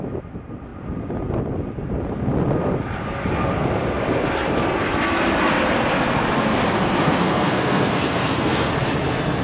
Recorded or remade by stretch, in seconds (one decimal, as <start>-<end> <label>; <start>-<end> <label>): 0.0-6.8 recorded; 6.8-8.7 remade; 8.7-9.4 recorded